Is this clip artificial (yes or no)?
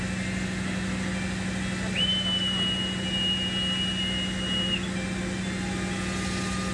no